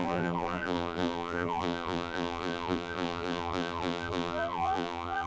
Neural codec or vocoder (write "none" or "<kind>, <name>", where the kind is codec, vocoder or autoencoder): vocoder, BigVGAN v2